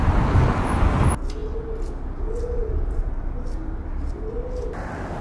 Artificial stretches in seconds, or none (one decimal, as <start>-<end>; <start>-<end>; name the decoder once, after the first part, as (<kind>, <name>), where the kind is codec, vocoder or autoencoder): none